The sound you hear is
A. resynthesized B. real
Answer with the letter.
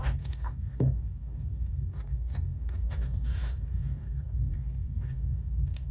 A